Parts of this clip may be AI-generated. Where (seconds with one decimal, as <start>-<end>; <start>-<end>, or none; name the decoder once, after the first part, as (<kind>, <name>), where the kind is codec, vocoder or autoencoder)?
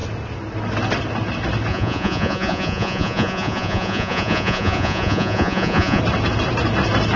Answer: 1.7-6.0 (vocoder, Vocos)